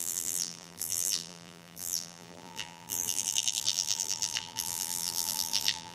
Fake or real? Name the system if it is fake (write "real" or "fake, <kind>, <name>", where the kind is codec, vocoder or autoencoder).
fake, vocoder, BigVGAN v2